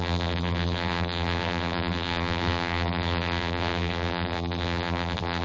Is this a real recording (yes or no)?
no